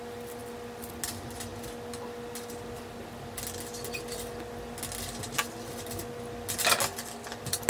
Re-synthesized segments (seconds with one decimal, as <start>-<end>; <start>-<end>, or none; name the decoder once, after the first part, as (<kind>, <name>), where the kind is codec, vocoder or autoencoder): none